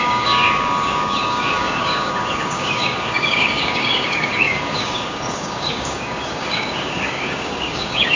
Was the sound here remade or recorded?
remade